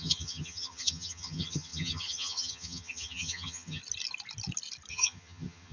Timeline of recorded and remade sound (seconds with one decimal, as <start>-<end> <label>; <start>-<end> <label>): 0.0-3.8 remade; 3.8-4.9 recorded; 4.9-5.7 remade